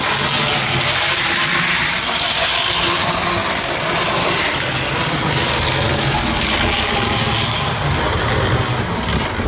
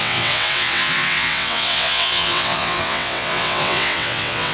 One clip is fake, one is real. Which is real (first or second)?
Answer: first